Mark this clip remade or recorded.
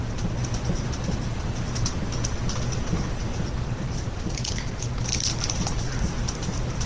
recorded